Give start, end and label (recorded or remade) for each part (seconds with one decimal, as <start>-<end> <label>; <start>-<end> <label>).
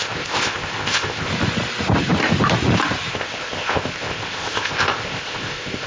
0.0-1.3 remade; 1.3-3.1 recorded; 3.1-5.9 remade